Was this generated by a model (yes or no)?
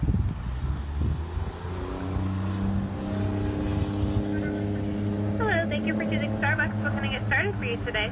no